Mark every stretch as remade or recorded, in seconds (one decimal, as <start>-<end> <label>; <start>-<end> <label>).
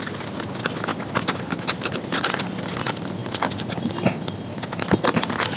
0.0-0.9 recorded; 0.9-2.0 remade; 2.0-3.2 recorded; 3.2-3.7 remade; 3.7-5.6 recorded